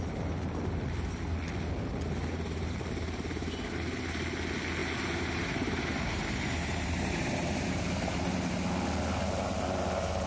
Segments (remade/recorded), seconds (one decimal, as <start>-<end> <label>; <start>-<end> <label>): 0.0-4.8 recorded; 4.8-8.5 remade; 8.5-10.3 recorded